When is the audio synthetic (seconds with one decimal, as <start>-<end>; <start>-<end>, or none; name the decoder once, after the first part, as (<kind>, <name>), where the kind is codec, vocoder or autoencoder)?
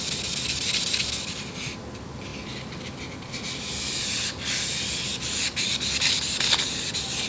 none